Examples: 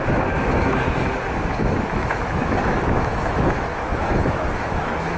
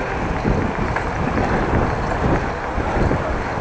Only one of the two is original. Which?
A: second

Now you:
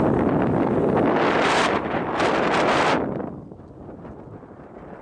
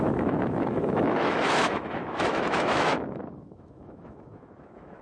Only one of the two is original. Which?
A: first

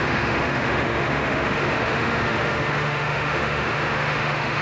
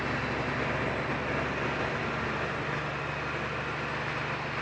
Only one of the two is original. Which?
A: second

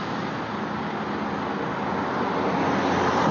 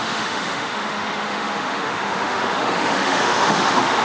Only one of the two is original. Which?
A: first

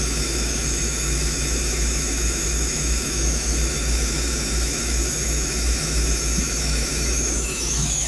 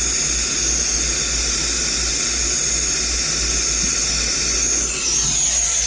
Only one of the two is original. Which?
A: second